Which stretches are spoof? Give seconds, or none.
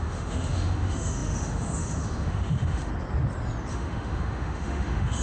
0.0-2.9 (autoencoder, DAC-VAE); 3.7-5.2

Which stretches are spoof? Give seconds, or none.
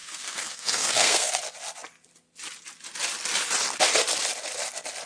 0.0-1.4 (codec, SNAC)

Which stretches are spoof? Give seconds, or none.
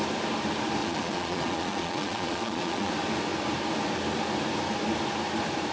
0.8-2.9 (vocoder, Vocos)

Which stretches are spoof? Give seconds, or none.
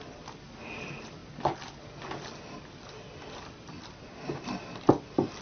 none